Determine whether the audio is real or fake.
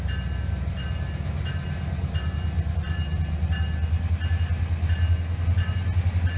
real